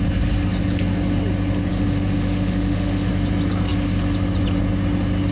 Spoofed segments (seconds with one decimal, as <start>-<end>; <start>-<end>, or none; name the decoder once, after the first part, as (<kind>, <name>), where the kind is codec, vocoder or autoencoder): 1.7-3.1 (autoencoder, DAC-VAE)